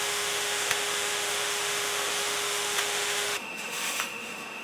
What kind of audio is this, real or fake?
fake